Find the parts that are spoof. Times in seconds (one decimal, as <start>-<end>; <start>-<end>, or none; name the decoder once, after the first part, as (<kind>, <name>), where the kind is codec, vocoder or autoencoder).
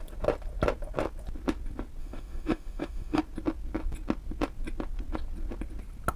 2.0-3.2 (autoencoder, DAC-VAE)